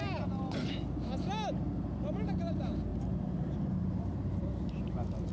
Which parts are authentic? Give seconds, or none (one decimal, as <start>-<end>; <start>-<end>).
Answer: 0.0-2.9